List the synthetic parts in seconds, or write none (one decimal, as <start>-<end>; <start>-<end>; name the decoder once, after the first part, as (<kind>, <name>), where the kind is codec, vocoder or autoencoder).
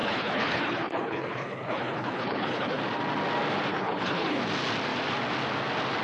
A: 0.0-2.8 (codec, HILCodec); 3.7-4.4